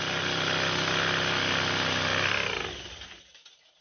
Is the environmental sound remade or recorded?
recorded